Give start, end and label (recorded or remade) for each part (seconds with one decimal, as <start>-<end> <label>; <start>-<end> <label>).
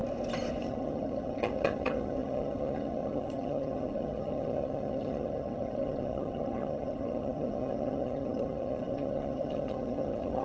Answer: 0.0-0.6 recorded; 0.6-10.4 remade